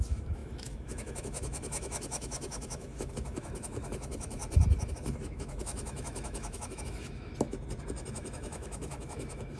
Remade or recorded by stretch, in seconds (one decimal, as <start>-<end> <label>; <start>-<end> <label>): 0.0-4.4 remade; 4.4-4.9 recorded; 4.9-7.3 remade; 7.3-8.1 recorded; 8.1-9.6 remade